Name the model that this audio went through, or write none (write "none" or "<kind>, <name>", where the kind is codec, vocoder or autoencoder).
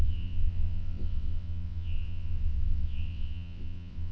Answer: vocoder, WaveNeXt